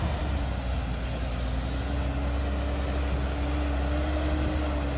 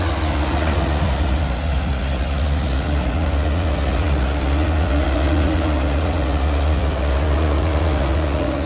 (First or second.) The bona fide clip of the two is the first